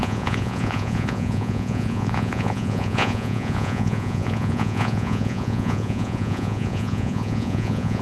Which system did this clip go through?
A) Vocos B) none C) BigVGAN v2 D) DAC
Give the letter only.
A